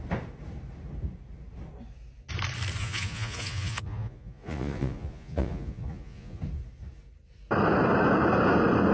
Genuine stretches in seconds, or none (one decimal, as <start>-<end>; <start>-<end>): 0.0-2.8; 6.4-8.9